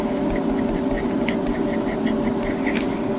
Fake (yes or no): no